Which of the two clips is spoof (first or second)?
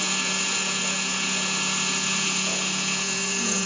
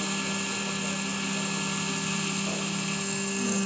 first